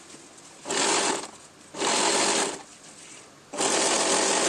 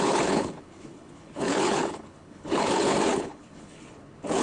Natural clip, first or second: first